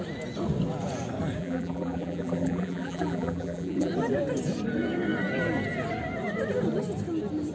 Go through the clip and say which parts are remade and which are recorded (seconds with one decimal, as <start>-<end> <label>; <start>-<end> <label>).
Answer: 0.0-1.4 recorded; 1.4-3.9 remade; 3.9-7.5 recorded